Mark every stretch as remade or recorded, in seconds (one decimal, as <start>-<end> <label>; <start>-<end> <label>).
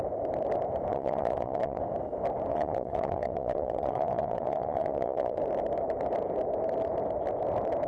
0.0-0.9 recorded; 0.9-1.8 remade; 1.8-2.5 recorded; 2.5-5.4 remade; 5.4-7.9 recorded